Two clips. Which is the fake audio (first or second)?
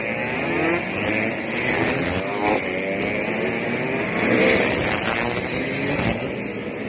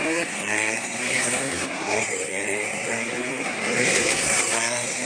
second